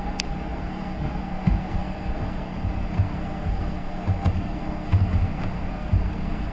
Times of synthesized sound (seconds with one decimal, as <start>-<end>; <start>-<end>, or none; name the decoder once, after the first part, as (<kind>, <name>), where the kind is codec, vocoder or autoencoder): 0.0-6.5 (codec, SNAC)